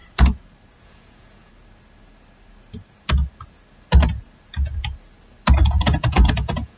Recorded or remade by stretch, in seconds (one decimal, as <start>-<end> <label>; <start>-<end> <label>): 0.0-0.8 recorded; 0.8-1.5 remade; 1.5-5.6 recorded; 5.6-6.8 remade